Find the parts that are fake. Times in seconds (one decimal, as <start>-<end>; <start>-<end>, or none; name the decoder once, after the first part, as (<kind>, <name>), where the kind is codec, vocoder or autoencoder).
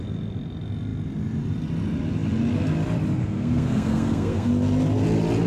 3.2-4.5 (codec, SNAC)